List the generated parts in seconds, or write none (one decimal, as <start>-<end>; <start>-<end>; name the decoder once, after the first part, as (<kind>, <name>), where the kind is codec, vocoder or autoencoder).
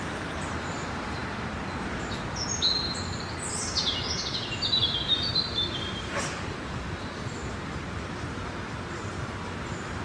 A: 0.0-1.2 (vocoder, BigVGAN v2); 4.3-10.0